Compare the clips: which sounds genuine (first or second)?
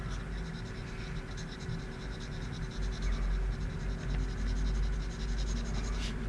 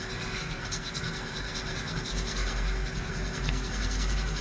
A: first